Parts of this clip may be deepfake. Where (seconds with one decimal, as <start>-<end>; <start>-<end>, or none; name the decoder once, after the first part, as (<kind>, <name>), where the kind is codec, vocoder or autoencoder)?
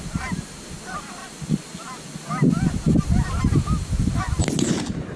none